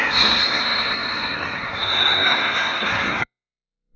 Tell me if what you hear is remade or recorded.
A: remade